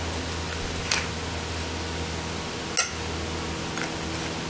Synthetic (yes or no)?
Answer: no